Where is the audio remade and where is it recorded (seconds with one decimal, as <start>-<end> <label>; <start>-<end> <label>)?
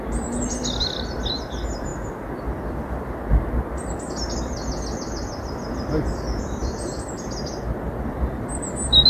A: 0.0-9.1 recorded